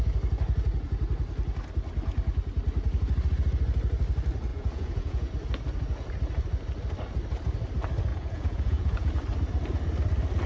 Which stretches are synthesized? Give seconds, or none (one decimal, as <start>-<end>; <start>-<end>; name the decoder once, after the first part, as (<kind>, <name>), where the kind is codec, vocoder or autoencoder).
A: 4.5-5.3 (vocoder, Vocos); 8.1-9.1